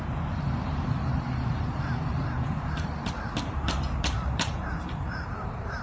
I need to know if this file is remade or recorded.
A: remade